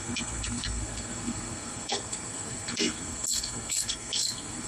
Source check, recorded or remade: remade